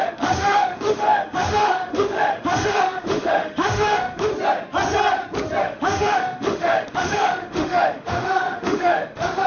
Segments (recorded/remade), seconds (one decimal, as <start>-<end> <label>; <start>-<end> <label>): 0.0-4.3 remade; 4.3-5.6 recorded; 5.6-9.5 remade